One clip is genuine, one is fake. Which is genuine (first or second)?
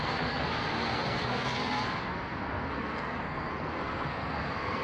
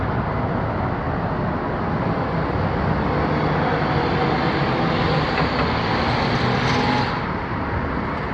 second